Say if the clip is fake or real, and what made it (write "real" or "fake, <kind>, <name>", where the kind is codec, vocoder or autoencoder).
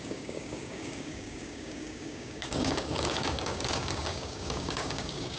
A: fake, codec, DAC